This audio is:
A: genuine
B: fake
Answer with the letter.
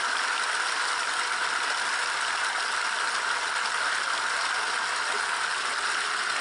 A